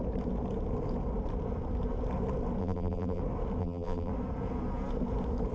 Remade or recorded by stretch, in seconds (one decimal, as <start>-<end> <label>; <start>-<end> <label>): 0.0-2.6 recorded; 2.6-3.2 remade; 3.2-3.6 recorded; 3.6-4.1 remade; 4.1-5.5 recorded